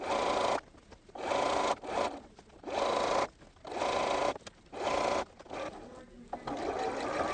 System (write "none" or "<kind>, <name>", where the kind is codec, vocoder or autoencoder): none